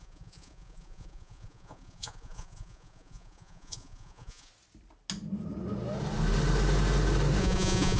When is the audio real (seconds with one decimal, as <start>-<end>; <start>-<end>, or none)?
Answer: 4.5-7.4